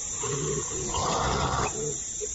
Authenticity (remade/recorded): remade